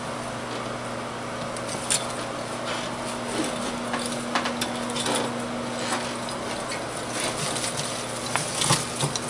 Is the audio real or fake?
real